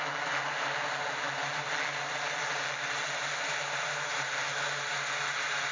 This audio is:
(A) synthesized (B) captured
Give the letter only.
B